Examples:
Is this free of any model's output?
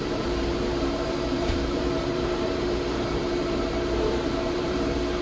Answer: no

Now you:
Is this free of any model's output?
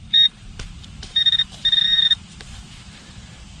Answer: no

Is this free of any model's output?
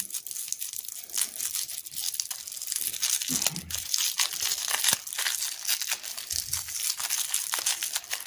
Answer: yes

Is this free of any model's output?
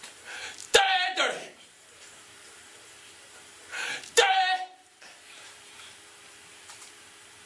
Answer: no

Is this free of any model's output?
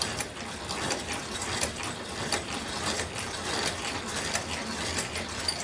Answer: no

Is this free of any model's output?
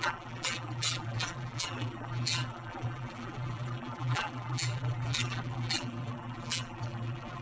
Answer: no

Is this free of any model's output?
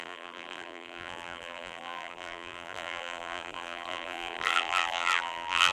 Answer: no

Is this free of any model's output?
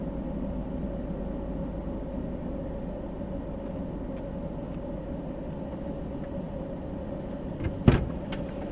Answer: yes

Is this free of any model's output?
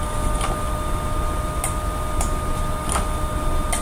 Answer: yes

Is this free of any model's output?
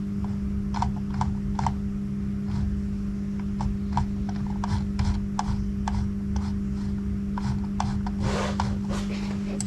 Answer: yes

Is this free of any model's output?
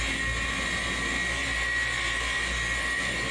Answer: yes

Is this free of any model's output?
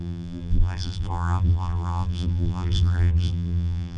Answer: no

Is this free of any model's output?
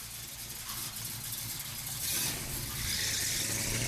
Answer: no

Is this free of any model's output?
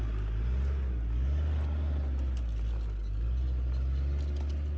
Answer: yes